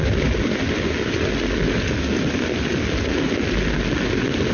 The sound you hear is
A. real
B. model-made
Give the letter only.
A